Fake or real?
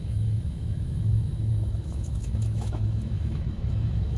fake